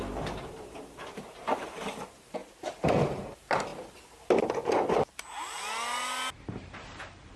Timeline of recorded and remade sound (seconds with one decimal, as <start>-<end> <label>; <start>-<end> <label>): 0.0-2.4 remade; 2.4-3.0 recorded; 3.0-3.7 remade; 3.7-6.3 recorded; 6.3-7.4 remade